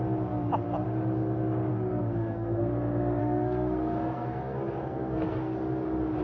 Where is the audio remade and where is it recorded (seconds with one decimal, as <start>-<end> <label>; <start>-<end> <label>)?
0.0-1.7 recorded; 1.7-2.6 remade; 2.6-3.2 recorded; 3.2-5.5 remade; 5.5-6.2 recorded